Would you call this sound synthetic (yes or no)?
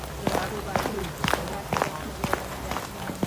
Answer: no